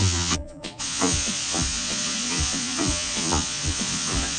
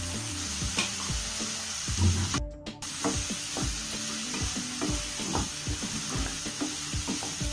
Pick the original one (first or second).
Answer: second